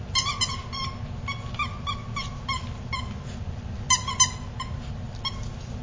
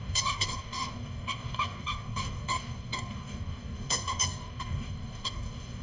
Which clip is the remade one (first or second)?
second